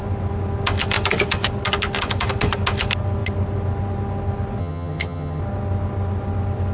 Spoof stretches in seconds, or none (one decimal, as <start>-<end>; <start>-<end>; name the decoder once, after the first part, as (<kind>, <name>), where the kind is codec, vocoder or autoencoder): 4.6-5.4 (vocoder, HiFi-GAN)